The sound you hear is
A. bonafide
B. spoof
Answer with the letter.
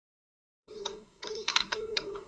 B